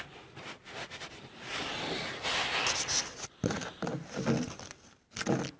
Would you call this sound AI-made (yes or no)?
no